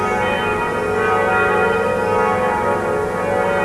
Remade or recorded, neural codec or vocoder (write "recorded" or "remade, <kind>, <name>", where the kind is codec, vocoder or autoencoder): recorded